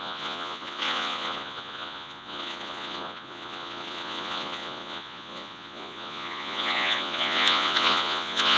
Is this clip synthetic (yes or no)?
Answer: yes